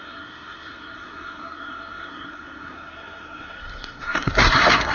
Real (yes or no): no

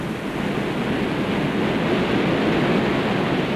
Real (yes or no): yes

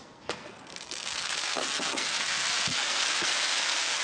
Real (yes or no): no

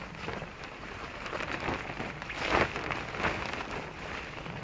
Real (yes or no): yes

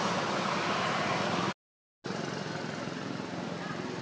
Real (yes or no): yes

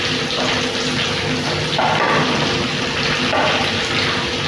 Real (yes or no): yes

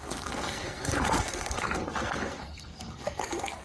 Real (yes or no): no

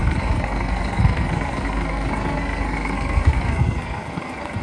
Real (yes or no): no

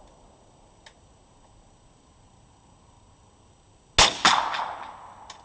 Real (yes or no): yes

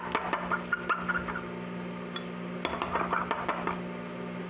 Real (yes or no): yes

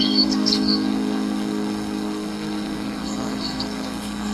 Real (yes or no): no